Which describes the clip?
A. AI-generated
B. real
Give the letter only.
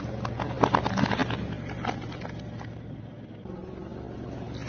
B